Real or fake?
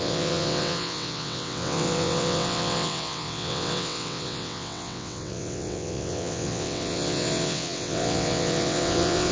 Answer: fake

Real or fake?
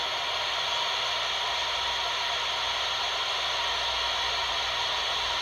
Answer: real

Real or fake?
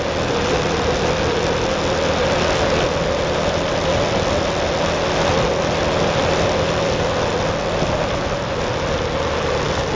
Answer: real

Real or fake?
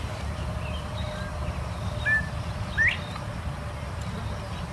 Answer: real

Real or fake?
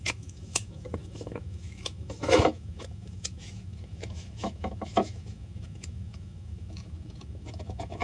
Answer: fake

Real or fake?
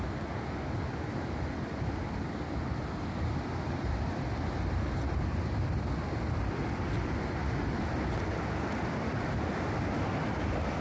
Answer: real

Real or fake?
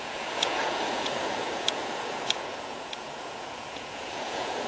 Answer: fake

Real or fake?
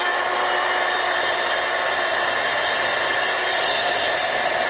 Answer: real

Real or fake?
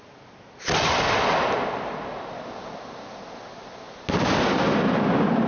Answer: real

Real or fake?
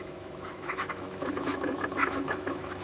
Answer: fake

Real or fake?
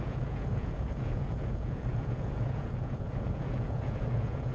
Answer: fake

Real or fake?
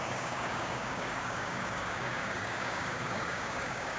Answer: fake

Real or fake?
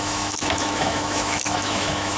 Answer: fake